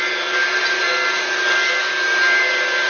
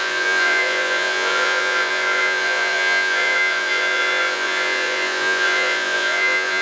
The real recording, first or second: first